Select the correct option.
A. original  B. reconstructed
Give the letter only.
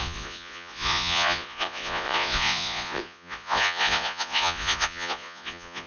B